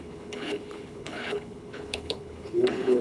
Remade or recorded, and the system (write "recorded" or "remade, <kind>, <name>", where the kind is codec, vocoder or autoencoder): remade, codec, HILCodec